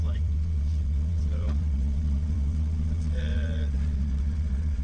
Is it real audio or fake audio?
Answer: fake